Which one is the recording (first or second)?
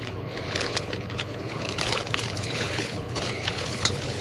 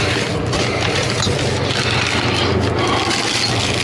second